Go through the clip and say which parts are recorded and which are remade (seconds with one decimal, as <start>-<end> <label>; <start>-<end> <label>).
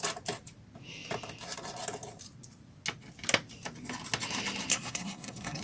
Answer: 0.0-4.7 recorded; 4.7-5.6 remade